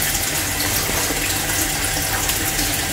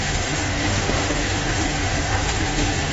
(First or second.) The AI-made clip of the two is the second